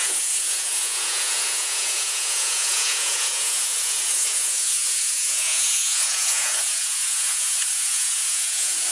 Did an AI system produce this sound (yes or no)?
yes